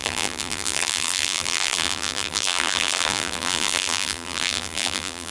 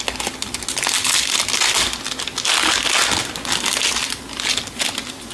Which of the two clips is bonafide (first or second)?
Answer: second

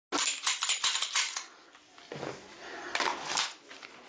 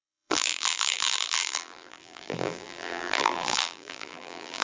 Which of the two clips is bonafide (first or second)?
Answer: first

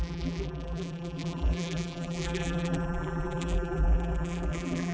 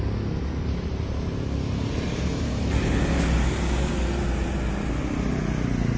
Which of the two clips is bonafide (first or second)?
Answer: second